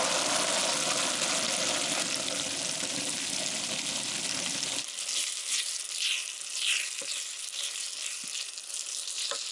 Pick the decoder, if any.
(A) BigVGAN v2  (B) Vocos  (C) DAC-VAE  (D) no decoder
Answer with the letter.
D